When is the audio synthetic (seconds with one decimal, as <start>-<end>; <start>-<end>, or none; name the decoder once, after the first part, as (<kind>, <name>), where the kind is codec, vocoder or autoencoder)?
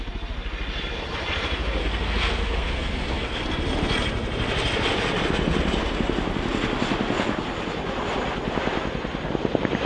1.8-3.4 (codec, SNAC)